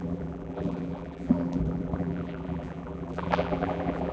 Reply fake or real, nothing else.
fake